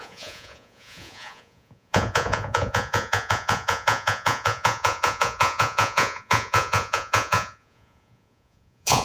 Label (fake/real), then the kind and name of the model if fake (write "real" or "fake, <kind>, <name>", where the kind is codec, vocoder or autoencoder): fake, vocoder, Vocos